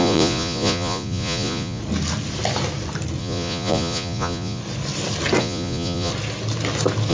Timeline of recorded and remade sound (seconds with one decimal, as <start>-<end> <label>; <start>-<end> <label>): 0.0-1.8 remade; 1.8-3.2 recorded; 3.2-4.6 remade; 4.6-5.4 recorded; 5.4-6.1 remade; 6.1-7.1 recorded